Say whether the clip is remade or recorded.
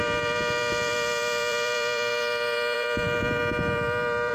remade